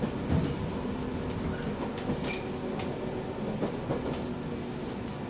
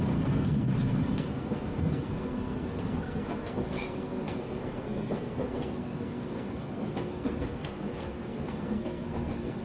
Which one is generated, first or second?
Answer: second